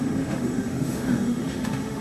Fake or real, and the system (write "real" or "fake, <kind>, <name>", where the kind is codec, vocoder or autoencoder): fake, autoencoder, DAC-VAE